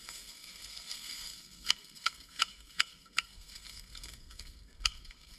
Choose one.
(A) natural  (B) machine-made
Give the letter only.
B